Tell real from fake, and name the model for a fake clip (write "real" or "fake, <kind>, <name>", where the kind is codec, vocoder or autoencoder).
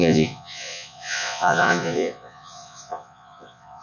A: fake, vocoder, Vocos